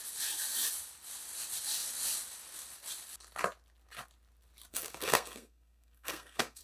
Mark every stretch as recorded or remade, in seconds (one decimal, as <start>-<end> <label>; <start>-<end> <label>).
0.0-4.7 recorded; 4.7-6.6 remade